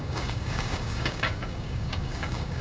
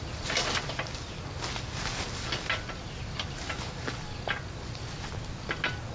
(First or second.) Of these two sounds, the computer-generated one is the first